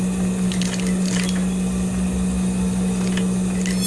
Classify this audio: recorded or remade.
recorded